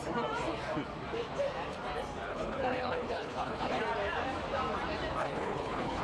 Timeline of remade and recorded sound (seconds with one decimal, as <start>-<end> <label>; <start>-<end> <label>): 0.0-2.3 recorded; 2.3-3.8 remade; 3.8-5.2 recorded; 5.2-6.0 remade